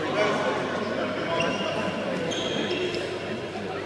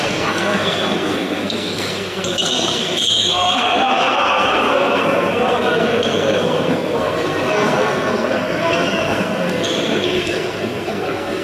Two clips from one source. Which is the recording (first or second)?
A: first